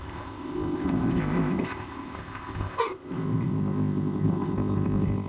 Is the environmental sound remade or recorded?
remade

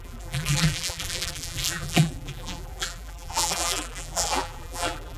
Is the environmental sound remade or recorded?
remade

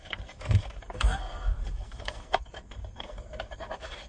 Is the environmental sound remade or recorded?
remade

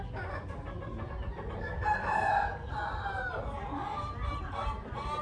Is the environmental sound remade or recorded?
recorded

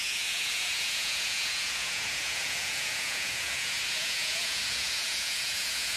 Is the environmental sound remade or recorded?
remade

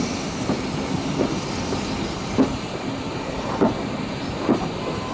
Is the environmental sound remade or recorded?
recorded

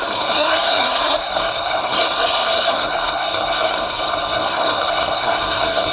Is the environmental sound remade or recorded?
remade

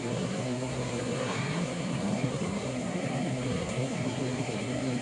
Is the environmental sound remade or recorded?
remade